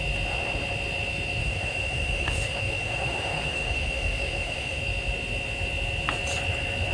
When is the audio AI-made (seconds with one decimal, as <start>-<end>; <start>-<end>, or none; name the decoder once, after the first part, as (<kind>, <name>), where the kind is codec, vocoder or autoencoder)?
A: 1.4-4.8 (autoencoder, DAC-VAE)